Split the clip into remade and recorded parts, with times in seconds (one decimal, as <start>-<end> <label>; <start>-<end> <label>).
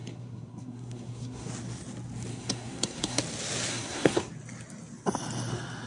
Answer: 0.0-1.5 remade; 1.5-2.3 recorded; 2.3-3.2 remade; 3.2-3.7 recorded; 3.7-4.3 remade; 4.3-5.9 recorded